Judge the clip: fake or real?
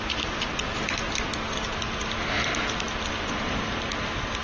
real